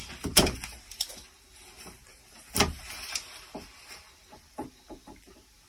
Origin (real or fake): real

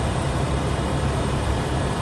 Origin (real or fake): fake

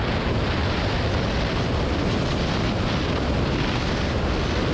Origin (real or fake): real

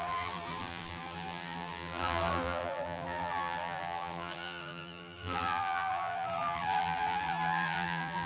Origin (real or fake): fake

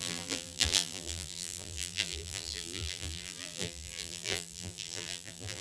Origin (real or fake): fake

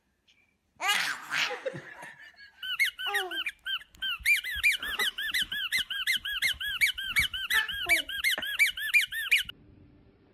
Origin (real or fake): fake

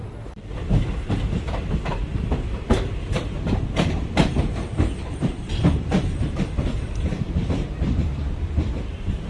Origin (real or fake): fake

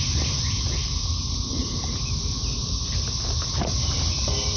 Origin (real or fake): fake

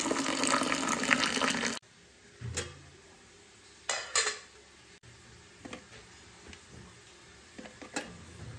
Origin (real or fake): real